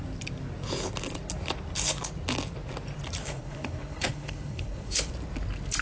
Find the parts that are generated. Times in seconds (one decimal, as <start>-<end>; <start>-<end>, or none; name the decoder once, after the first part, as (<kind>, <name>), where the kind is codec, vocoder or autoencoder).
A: 3.2-5.1 (codec, HILCodec)